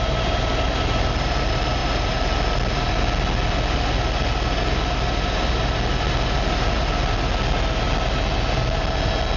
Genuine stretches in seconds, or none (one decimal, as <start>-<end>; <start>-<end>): 0.0-9.4